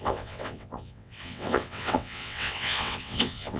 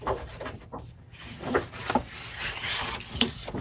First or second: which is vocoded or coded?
first